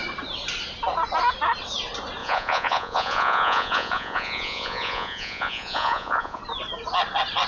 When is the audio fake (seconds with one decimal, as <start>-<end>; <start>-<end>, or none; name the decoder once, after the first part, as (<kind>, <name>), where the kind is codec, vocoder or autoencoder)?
2.2-6.4 (vocoder, Vocos)

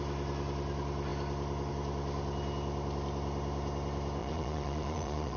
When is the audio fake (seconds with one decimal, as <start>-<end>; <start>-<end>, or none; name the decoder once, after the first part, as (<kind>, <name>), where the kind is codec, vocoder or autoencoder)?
4.2-5.4 (vocoder, Vocos)

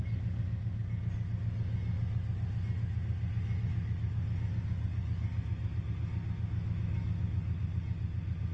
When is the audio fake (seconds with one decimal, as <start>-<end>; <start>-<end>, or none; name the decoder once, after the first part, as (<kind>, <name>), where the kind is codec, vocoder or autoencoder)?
none